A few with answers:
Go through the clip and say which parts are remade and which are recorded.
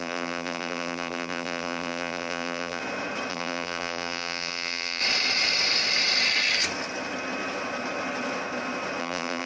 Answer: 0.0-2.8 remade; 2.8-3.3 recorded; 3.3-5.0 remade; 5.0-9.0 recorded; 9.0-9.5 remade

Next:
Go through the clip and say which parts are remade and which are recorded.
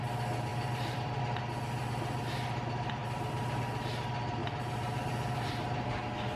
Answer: 0.0-0.5 recorded; 0.5-1.2 remade; 1.2-3.0 recorded; 3.0-3.6 remade; 3.6-4.4 recorded; 4.4-6.0 remade; 6.0-6.4 recorded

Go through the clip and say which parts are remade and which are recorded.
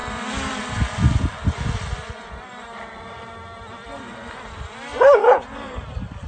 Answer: 0.0-6.3 remade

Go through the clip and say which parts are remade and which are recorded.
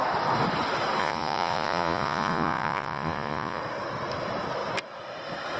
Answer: 0.0-1.0 recorded; 1.0-3.6 remade; 3.6-5.6 recorded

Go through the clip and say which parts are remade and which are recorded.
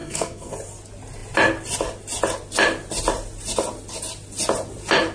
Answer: 0.0-0.5 remade; 0.5-5.1 recorded